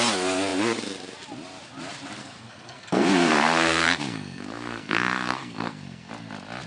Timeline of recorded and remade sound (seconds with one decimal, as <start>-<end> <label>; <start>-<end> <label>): 0.0-2.2 recorded; 2.2-6.1 remade; 6.1-6.7 recorded